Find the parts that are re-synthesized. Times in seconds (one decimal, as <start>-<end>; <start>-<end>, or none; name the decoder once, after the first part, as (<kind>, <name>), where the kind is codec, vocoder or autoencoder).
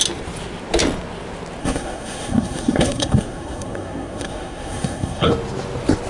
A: 1.6-5.3 (codec, SNAC)